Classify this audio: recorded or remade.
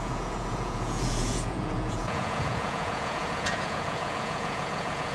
remade